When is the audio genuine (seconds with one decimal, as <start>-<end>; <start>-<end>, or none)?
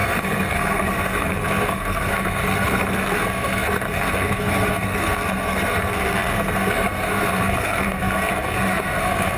none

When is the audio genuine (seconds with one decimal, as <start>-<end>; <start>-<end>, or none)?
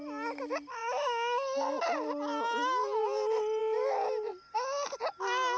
0.0-5.6